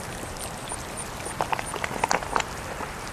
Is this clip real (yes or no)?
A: no